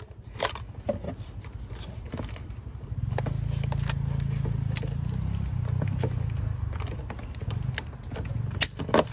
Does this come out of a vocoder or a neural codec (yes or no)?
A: no